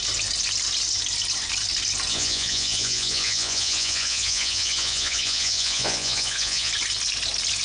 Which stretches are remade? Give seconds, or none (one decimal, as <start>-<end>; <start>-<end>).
2.1-6.7